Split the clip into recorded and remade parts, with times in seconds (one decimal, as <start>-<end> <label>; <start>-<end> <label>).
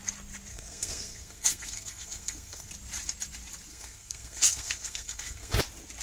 0.0-0.5 recorded; 0.5-2.7 remade; 2.7-3.7 recorded; 3.7-5.6 remade; 5.6-6.0 recorded